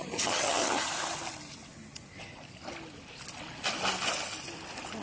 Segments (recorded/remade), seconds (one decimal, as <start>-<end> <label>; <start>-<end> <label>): 0.0-0.9 remade; 0.9-5.0 recorded